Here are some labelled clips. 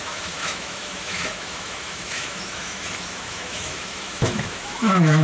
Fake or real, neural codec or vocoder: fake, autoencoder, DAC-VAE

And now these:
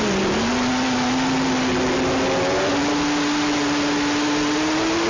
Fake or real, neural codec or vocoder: real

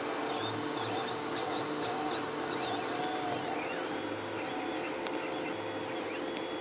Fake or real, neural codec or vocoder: real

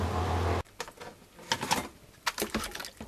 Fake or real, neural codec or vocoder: real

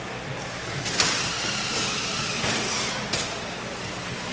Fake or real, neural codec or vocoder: real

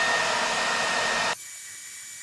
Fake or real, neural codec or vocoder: real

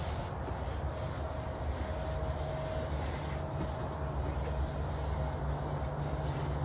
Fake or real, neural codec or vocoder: real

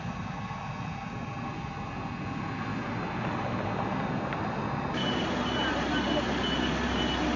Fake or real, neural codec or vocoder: real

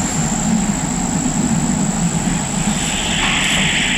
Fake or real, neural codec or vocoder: real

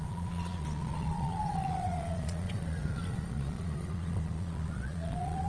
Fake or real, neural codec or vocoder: fake, vocoder, Vocos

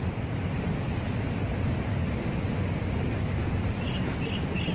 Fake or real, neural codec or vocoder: real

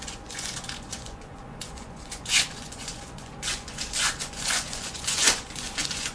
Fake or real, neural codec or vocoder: fake, vocoder, Vocos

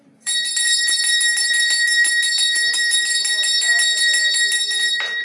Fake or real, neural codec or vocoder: fake, vocoder, BigVGAN v2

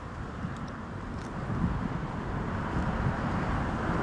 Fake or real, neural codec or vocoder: real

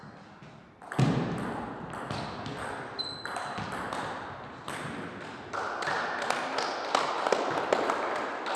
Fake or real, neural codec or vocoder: real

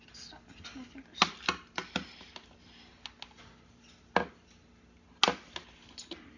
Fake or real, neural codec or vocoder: real